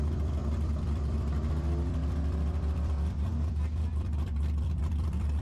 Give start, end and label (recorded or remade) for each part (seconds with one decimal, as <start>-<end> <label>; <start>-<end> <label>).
0.0-5.4 remade